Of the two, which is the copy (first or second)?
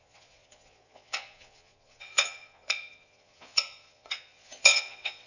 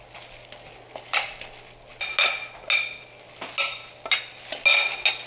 first